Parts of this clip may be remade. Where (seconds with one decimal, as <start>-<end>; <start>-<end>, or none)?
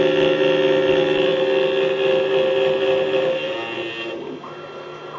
none